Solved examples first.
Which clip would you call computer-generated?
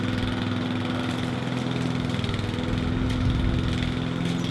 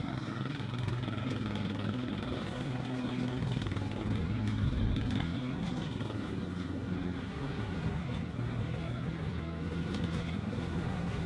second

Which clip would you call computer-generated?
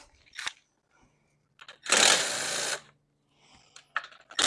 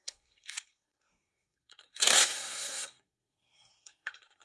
second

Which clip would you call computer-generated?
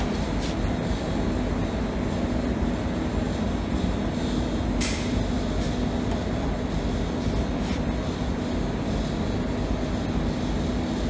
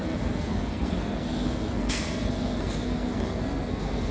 second